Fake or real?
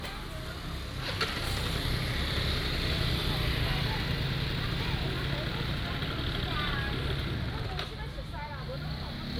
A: real